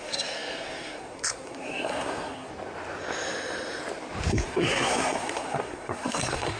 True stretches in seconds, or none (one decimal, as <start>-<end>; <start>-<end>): 2.5-4.3